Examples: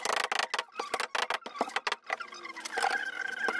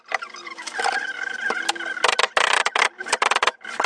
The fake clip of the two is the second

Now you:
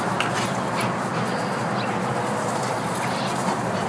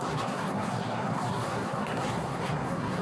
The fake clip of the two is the second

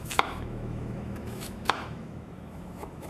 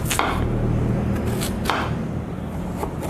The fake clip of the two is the first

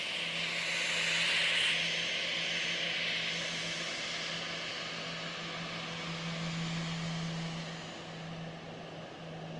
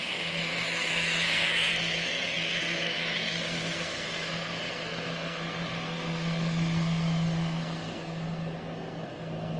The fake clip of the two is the second